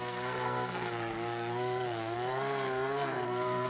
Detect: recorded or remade remade